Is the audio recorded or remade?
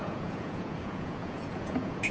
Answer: remade